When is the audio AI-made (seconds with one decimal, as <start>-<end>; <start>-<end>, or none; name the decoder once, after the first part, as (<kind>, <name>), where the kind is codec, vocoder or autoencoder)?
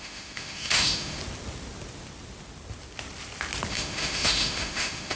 0.0-1.2 (autoencoder, DAC-VAE); 3.7-5.2